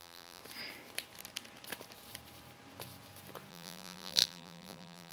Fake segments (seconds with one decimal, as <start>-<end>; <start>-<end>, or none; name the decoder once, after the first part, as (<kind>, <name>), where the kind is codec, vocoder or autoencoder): 0.0-0.4 (vocoder, BigVGAN v2); 3.5-5.1